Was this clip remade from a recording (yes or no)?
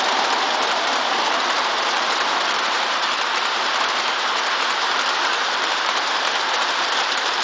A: yes